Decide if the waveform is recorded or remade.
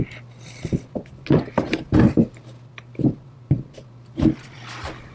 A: recorded